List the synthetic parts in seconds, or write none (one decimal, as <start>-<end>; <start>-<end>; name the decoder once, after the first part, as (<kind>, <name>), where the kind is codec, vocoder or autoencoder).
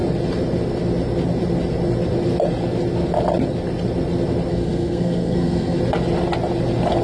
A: 4.5-5.8 (codec, SNAC)